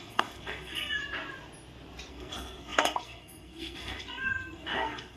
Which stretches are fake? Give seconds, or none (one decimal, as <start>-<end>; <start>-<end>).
0.0-1.0; 2.1-5.2